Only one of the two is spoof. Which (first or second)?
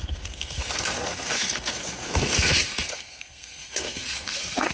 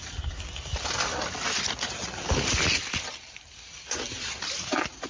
first